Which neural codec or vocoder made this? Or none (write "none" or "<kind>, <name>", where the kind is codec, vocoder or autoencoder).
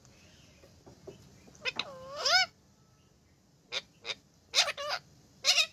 none